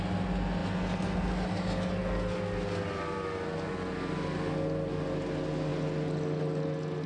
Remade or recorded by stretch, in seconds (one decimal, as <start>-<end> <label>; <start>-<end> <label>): 0.0-7.1 recorded